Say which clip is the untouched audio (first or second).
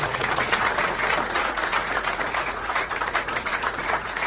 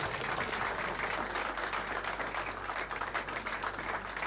second